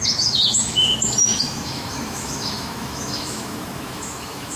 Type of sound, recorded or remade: remade